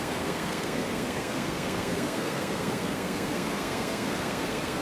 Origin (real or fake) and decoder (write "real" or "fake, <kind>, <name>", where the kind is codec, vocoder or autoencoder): fake, codec, SNAC